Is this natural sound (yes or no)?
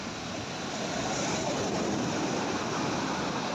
yes